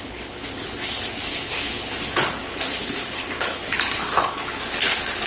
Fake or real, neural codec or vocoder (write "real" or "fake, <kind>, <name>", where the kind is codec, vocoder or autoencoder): fake, codec, HILCodec